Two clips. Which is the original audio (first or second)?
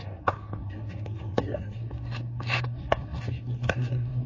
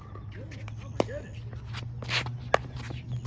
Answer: second